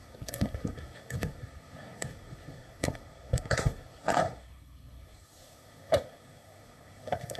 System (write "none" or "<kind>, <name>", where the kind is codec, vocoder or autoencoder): codec, SNAC